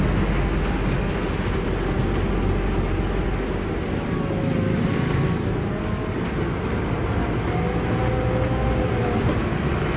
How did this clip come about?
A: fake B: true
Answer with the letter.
B